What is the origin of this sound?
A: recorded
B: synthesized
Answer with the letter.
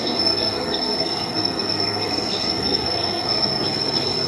B